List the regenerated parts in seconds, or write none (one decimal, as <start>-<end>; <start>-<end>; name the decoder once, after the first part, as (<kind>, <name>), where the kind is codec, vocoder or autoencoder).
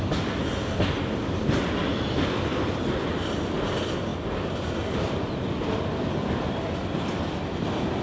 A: 2.5-3.3 (vocoder, BigVGAN v2)